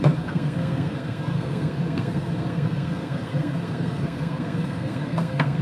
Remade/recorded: remade